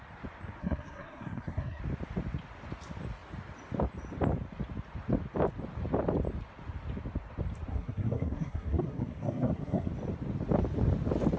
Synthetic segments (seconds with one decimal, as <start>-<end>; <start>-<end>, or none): 0.6-1.8; 7.7-9.9